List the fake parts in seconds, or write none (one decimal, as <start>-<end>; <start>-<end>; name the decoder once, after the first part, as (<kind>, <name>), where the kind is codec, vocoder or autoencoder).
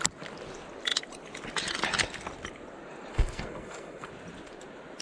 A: 3.1-4.1 (codec, SNAC)